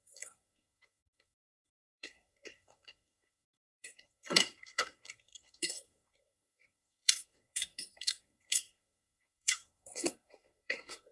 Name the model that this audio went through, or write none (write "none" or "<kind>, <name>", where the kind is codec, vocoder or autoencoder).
codec, SNAC